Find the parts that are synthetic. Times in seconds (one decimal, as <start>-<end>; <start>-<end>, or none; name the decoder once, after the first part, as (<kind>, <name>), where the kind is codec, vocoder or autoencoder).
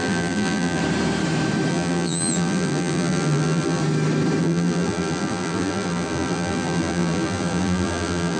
0.0-0.8 (vocoder, BigVGAN v2); 1.7-3.8; 4.4-8.4